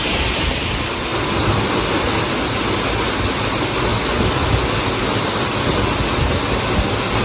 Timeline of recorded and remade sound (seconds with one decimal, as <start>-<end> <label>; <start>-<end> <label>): 0.0-7.2 recorded